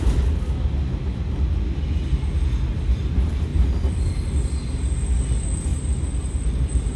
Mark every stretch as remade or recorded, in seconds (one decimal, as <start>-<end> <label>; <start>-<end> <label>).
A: 0.0-3.5 recorded; 3.5-4.5 remade; 4.5-5.7 recorded; 5.7-6.3 remade; 6.3-7.0 recorded